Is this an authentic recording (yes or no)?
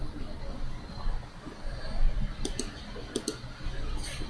yes